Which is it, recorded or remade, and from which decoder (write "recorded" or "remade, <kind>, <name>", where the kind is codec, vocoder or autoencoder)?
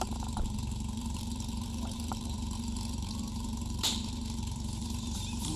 remade, vocoder, BigVGAN v2